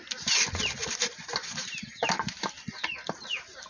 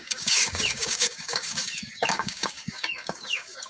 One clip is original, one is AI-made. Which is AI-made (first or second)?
second